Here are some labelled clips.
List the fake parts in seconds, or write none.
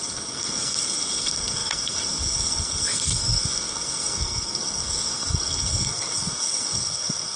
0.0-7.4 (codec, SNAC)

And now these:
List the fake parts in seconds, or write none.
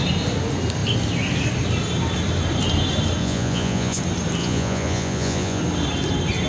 3.2-4.0 (vocoder, Vocos); 4.4-5.6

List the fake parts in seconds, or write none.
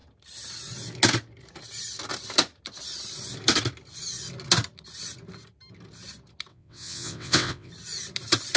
6.5-7.7 (vocoder, WaveNeXt)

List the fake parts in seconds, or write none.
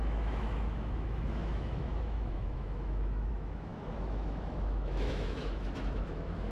0.0-6.5 (autoencoder, DAC-VAE)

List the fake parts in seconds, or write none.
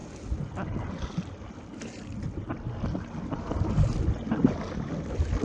none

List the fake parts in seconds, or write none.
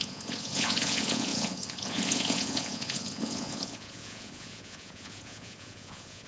0.0-6.3 (vocoder, Vocos)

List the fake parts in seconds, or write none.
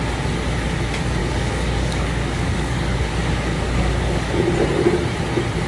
1.2-4.4 (codec, DAC)